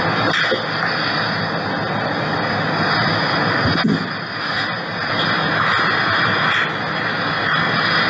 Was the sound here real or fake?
real